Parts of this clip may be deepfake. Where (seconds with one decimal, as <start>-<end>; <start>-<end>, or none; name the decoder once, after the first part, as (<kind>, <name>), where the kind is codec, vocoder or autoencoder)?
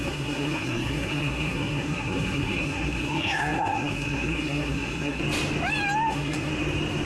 0.0-5.2 (codec, SNAC); 6.1-6.5